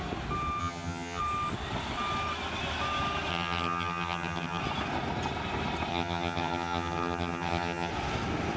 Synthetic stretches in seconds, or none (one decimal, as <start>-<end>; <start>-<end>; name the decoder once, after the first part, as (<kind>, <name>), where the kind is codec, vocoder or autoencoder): 0.6-1.2 (vocoder, HiFi-GAN); 3.3-4.6; 5.9-7.9